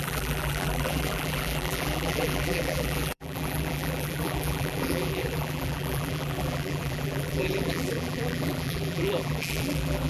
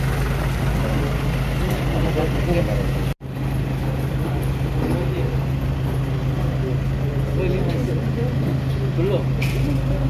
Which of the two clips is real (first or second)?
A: second